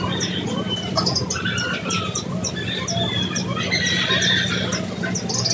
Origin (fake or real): real